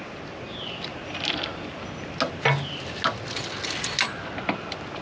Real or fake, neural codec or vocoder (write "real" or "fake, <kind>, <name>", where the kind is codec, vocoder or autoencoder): real